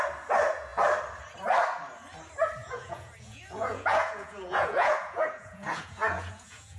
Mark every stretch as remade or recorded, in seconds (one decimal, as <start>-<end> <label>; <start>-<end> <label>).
0.0-2.6 recorded; 2.6-6.8 remade